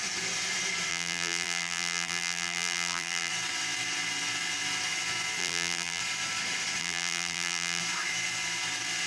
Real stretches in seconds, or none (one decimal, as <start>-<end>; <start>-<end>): 0.0-0.9; 3.3-5.4; 6.0-6.8; 7.8-9.1